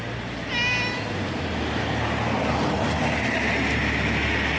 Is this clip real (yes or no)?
yes